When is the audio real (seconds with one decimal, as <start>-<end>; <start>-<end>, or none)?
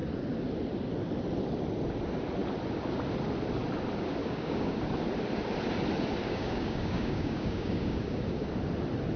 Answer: 0.0-4.2; 4.8-6.2; 8.5-9.2